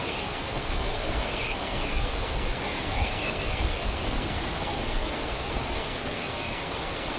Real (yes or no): no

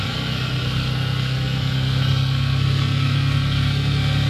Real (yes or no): no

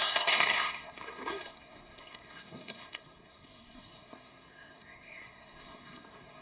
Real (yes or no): no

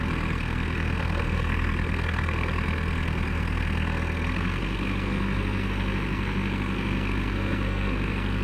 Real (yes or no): no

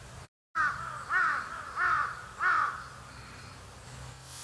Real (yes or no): yes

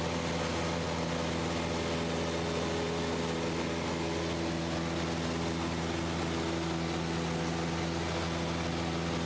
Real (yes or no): yes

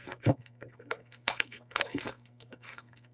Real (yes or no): no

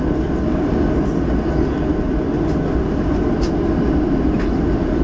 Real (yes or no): yes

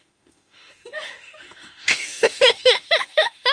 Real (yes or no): no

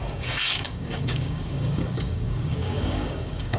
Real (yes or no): no